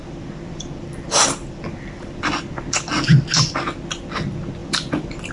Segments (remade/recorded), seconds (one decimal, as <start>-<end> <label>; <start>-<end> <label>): 0.0-2.4 remade; 2.4-4.6 recorded; 4.6-5.3 remade